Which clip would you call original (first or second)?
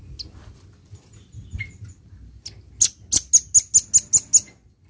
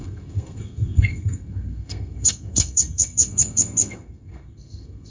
first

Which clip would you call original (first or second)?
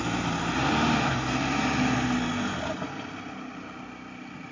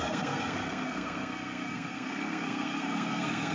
first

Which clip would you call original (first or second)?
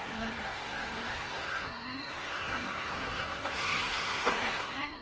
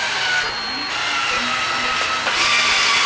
second